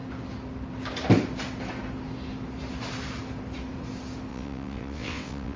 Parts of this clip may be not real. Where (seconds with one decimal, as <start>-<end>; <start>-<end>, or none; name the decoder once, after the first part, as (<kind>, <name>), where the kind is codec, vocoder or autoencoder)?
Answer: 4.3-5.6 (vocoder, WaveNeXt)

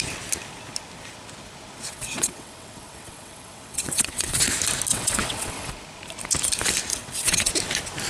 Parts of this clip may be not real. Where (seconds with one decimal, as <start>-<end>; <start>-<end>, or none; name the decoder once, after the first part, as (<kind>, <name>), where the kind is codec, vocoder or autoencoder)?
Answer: 1.9-4.4 (vocoder, WaveNeXt); 4.9-5.7; 6.9-7.5

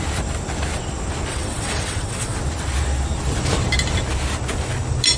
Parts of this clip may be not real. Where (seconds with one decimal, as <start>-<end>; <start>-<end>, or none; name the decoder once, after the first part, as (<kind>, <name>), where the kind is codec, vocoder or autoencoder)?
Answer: 1.3-2.4 (vocoder, WaveNeXt)

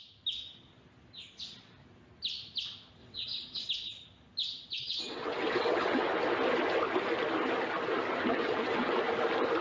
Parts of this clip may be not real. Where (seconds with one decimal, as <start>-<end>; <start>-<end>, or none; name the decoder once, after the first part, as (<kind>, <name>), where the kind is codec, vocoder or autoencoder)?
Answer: 3.0-3.7 (vocoder, WaveNeXt); 4.4-6.1; 8.3-9.0

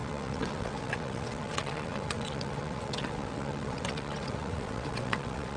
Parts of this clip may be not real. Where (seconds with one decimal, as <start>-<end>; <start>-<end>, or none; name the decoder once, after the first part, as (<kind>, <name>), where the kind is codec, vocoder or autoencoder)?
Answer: 0.0-5.6 (vocoder, WaveNeXt)